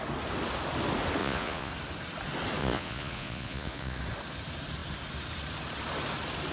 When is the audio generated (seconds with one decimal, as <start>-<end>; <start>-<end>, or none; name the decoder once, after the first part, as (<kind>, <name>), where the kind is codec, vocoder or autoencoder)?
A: 1.2-1.7 (vocoder, Vocos); 2.6-4.0